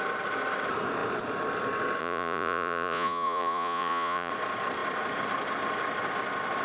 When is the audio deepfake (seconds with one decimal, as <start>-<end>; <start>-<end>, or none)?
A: 2.0-4.3